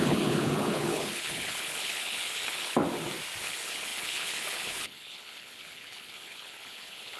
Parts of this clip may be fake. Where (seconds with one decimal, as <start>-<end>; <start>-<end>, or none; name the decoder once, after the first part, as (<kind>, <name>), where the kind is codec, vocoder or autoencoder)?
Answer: 0.0-2.8 (codec, HILCodec); 3.4-7.2